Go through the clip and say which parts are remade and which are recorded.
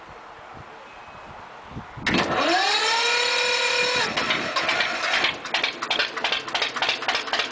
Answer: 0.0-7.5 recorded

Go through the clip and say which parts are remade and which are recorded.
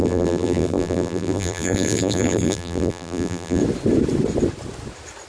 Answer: 0.0-3.6 remade; 3.6-5.3 recorded